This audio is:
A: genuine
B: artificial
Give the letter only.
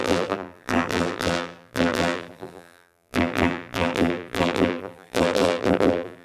B